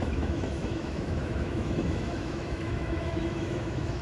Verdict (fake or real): fake